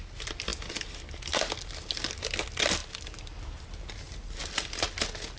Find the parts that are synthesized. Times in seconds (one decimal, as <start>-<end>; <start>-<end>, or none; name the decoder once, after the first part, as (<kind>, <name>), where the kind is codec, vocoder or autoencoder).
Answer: none